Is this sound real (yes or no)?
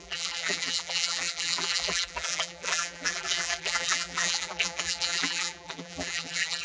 no